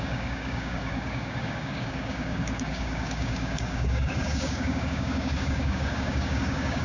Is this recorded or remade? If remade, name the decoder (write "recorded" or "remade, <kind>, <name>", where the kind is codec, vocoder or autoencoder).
remade, codec, DAC